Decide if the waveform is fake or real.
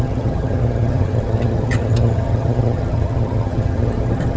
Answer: fake